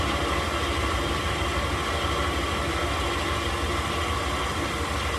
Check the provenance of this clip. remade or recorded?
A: recorded